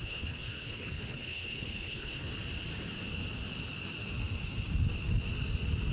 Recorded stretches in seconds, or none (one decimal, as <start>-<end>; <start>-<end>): 2.3-5.9